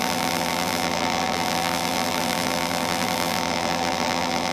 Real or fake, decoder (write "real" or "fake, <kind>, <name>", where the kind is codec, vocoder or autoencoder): fake, vocoder, BigVGAN v2